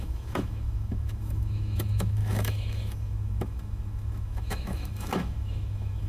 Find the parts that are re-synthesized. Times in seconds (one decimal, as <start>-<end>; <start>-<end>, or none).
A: 0.0-6.1